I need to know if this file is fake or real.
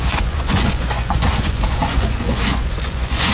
fake